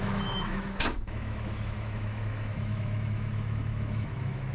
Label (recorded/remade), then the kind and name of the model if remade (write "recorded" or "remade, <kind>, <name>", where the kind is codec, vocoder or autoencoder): remade, autoencoder, DAC-VAE